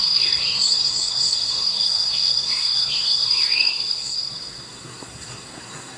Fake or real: fake